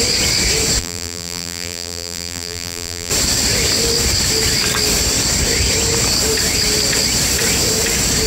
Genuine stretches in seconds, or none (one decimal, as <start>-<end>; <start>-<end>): 0.0-0.8; 3.1-8.3